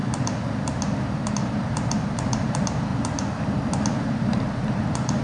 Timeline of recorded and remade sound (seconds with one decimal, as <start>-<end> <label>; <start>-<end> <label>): 0.0-2.9 remade; 2.9-4.1 recorded; 4.1-5.2 remade